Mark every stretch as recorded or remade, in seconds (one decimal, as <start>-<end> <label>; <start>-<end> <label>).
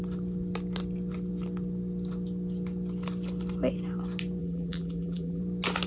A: 0.0-4.4 recorded; 4.4-5.4 remade; 5.4-5.9 recorded